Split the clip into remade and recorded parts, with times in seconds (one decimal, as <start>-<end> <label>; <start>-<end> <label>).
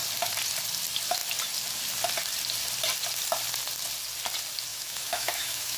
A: 0.0-4.7 recorded; 4.7-5.8 remade